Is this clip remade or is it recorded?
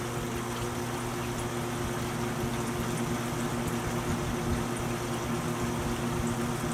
recorded